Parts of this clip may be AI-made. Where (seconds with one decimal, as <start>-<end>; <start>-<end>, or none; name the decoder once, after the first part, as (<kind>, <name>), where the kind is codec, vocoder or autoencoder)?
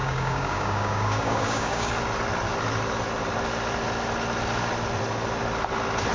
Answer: 0.0-1.9 (codec, DAC)